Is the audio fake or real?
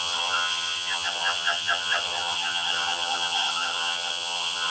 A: fake